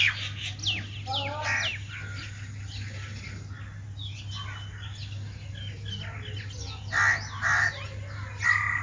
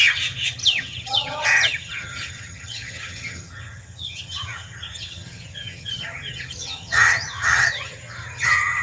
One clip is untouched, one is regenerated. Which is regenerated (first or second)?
second